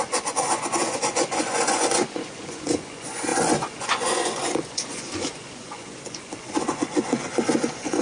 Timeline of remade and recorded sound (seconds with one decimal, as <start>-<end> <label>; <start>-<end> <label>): 0.0-8.0 remade